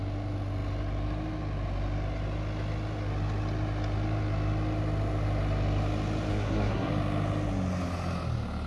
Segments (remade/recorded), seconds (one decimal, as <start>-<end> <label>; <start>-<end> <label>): 0.0-6.3 recorded; 6.3-6.9 remade; 6.9-8.7 recorded